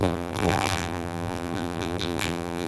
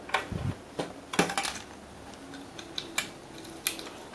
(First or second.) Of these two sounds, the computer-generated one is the first